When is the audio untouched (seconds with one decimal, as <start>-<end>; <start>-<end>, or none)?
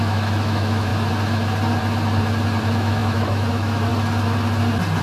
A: 0.9-2.6; 3.9-5.0